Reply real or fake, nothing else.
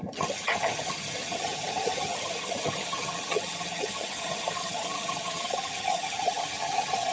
fake